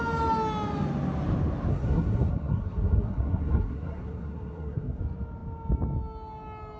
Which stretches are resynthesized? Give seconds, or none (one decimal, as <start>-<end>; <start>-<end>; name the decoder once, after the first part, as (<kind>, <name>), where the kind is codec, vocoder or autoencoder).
1.7-5.0 (codec, SNAC)